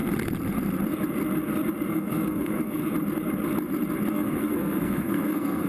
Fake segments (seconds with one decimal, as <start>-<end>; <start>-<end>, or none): 1.9-2.8; 4.1-5.7